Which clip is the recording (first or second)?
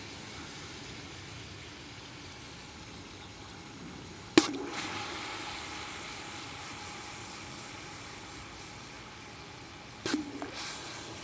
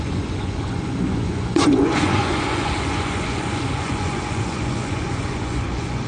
first